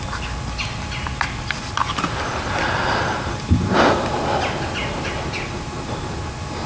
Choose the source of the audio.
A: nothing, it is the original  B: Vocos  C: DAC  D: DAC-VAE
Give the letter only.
A